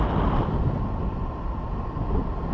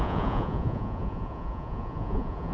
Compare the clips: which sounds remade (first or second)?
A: second